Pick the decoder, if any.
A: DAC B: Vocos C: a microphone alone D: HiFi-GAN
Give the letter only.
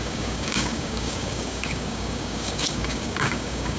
A